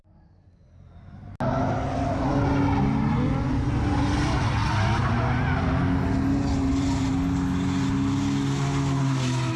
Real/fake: real